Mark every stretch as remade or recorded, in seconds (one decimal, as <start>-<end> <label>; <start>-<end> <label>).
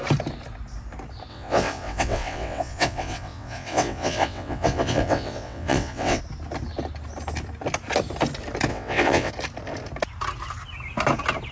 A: 0.0-1.3 recorded; 1.3-6.2 remade; 6.2-8.7 recorded; 8.7-9.3 remade; 9.3-11.5 recorded